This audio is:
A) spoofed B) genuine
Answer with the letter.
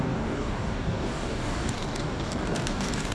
A